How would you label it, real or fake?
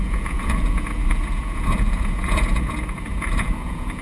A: fake